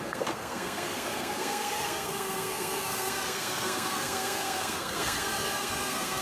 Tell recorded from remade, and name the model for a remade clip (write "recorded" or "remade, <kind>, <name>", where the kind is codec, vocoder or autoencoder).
remade, codec, SNAC